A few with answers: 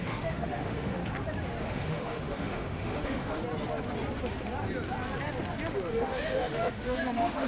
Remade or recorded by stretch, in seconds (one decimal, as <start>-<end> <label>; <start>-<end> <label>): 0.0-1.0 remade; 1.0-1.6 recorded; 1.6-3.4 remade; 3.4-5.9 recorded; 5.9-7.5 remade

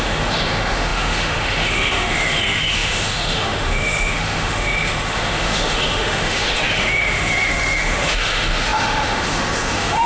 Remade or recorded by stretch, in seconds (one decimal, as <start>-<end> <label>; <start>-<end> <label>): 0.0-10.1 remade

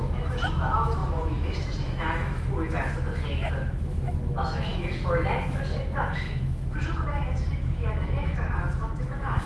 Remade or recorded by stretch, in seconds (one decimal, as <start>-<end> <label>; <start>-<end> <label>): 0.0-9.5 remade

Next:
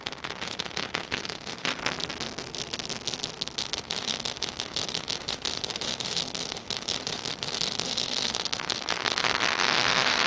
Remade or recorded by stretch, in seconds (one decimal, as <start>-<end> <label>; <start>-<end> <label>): 0.0-1.8 remade; 1.8-3.6 recorded; 3.6-10.3 remade

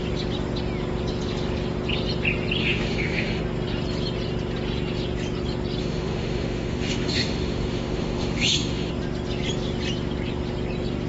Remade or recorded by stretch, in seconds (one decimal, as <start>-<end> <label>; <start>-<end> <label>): 0.0-2.6 recorded; 2.6-3.4 remade; 3.4-5.8 recorded; 5.8-8.9 remade; 8.9-11.1 recorded

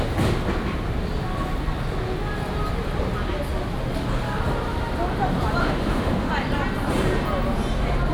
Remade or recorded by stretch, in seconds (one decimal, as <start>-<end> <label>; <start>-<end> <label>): 0.0-5.6 recorded; 5.6-6.3 remade; 6.3-8.1 recorded

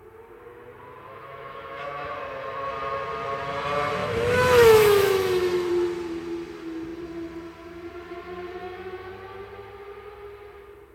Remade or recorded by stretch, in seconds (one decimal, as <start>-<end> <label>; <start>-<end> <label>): 0.0-1.1 recorded; 1.1-2.1 remade; 2.1-4.0 recorded; 4.0-5.7 remade; 5.7-8.6 recorded; 8.6-9.1 remade; 9.1-10.9 recorded

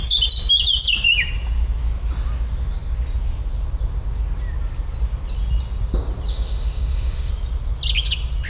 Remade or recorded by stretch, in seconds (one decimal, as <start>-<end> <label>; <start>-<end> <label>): 0.0-6.3 recorded; 6.3-7.3 remade; 7.3-8.5 recorded